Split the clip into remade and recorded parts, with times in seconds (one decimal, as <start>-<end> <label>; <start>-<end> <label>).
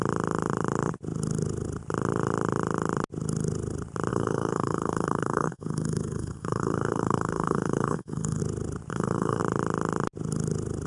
0.0-4.1 recorded; 4.1-8.4 remade; 8.4-8.9 recorded; 8.9-9.4 remade; 9.4-10.9 recorded